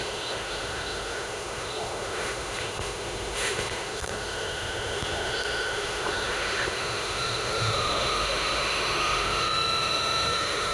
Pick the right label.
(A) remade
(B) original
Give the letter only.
A